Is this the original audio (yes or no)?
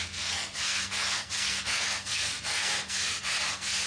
no